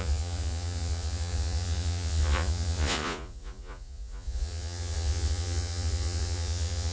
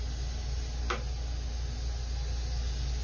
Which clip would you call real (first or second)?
second